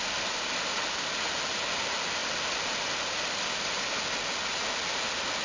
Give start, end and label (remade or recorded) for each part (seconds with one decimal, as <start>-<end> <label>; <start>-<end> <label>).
0.0-5.4 recorded